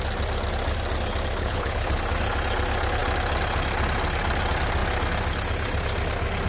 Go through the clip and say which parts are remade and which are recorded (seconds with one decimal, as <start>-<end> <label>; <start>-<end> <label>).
0.0-1.4 recorded; 1.4-2.0 remade; 2.0-6.5 recorded